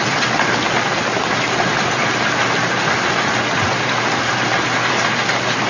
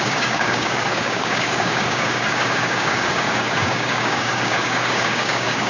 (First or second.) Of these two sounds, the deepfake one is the second